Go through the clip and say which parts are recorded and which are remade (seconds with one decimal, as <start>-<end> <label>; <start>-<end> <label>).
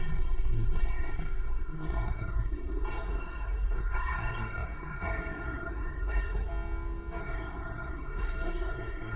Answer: 0.0-6.5 remade; 6.5-7.2 recorded; 7.2-9.2 remade